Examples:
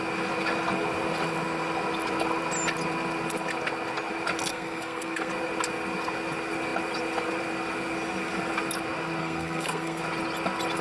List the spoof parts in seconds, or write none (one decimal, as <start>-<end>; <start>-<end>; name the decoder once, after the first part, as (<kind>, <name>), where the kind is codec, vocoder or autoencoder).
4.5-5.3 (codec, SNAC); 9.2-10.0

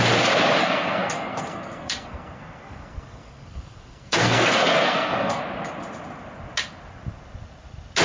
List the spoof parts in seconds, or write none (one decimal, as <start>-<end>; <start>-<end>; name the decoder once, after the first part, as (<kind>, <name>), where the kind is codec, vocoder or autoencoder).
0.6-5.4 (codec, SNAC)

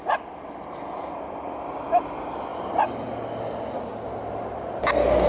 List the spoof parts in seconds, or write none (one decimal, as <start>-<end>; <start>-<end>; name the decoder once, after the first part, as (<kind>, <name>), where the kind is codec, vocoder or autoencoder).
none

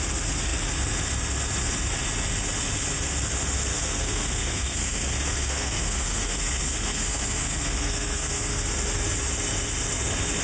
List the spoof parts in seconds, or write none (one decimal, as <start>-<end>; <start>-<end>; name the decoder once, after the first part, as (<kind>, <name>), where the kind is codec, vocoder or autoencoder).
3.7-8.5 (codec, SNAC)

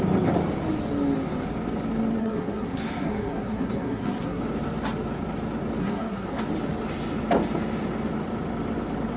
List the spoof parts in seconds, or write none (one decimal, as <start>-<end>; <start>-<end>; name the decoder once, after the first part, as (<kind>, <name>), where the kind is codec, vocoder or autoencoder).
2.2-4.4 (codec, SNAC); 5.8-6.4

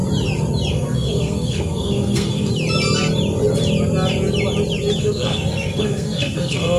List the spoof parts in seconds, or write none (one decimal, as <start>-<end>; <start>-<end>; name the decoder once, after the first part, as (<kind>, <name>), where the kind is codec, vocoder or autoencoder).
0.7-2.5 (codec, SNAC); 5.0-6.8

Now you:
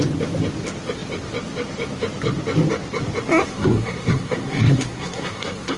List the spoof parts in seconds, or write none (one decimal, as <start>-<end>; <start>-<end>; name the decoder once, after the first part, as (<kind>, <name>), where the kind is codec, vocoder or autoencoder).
3.5-5.8 (codec, SNAC)

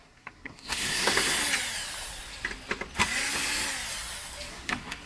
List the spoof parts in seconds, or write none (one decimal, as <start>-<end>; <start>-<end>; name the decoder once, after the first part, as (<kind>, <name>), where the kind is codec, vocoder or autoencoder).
0.0-1.4 (codec, SNAC); 4.5-5.1